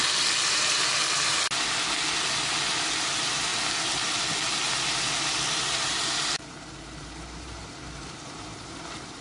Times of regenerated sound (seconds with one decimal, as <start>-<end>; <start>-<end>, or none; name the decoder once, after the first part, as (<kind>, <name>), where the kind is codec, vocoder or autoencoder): 3.1-3.5 (vocoder, BigVGAN v2); 5.5-9.2